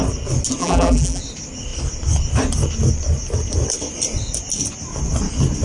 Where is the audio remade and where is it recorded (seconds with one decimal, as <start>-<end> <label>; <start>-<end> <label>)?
0.0-0.6 recorded; 0.6-1.2 remade; 1.2-5.6 recorded